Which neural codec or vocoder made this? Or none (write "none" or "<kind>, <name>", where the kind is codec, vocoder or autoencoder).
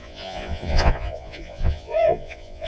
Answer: vocoder, Vocos